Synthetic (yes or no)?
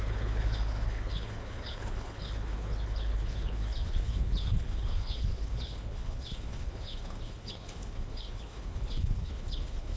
yes